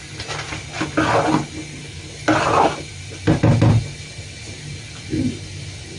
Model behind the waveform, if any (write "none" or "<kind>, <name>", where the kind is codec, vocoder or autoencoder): none